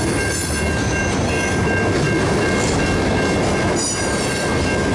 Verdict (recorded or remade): recorded